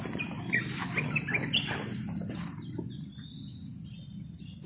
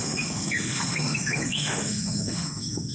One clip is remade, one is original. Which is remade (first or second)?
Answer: second